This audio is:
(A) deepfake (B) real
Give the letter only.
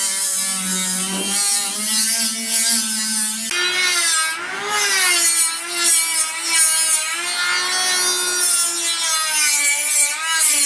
B